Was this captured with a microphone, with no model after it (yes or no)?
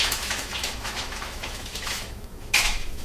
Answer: no